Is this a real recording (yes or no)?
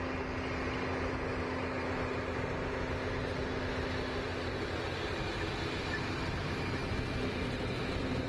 yes